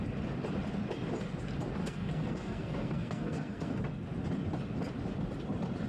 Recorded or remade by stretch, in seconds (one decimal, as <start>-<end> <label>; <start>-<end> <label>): 0.0-1.8 recorded; 1.8-3.8 remade; 3.8-5.9 recorded